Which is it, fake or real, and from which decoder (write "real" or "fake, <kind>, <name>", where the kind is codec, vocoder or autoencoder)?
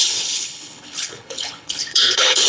fake, codec, HILCodec